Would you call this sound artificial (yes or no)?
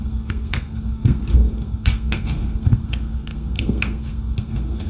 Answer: yes